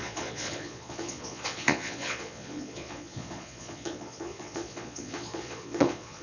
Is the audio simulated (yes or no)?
yes